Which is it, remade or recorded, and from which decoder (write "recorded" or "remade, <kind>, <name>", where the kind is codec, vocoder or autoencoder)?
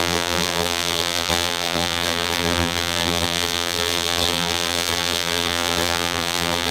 remade, vocoder, BigVGAN v2